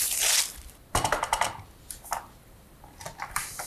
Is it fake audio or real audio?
real